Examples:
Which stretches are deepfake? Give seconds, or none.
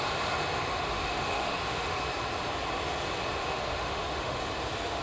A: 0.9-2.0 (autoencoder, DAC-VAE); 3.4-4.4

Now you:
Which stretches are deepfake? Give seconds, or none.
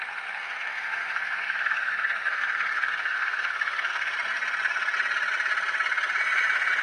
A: 0.0-4.1 (codec, SNAC)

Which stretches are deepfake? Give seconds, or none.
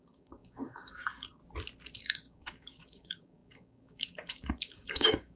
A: 0.0-1.4 (codec, DAC); 2.0-5.4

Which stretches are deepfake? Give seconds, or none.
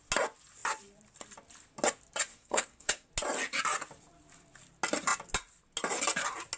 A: 2.3-3.1 (codec, SNAC)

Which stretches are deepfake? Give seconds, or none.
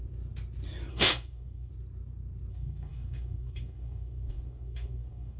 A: 0.9-1.7 (codec, DAC); 2.5-5.4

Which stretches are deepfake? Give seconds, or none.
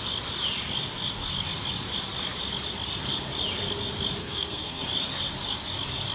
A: 4.2-4.8 (codec, SNAC)